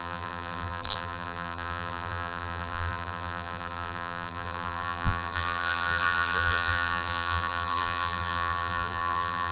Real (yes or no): no